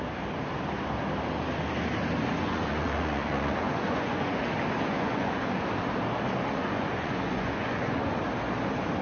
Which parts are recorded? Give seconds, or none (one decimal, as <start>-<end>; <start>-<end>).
0.0-2.3; 4.4-4.9; 5.6-6.5; 8.2-9.0